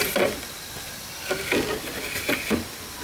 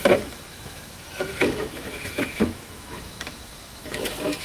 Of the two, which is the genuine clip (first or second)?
first